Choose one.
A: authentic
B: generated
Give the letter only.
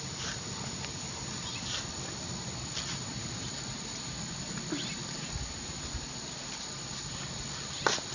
A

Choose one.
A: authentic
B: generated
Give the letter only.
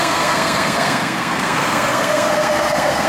B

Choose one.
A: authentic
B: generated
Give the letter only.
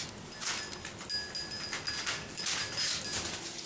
A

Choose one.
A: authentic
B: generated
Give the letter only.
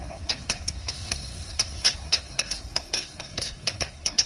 B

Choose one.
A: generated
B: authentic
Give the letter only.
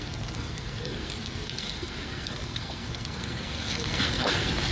A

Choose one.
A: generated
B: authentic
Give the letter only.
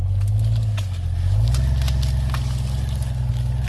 B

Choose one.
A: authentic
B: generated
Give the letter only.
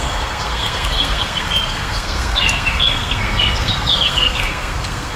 B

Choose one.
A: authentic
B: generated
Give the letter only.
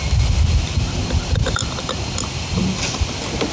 A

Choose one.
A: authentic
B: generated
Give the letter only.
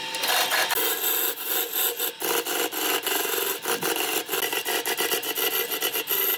A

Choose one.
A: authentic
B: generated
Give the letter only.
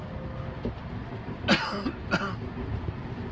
A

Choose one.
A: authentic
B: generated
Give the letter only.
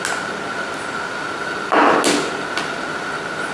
A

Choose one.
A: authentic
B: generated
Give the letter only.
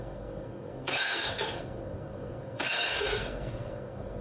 B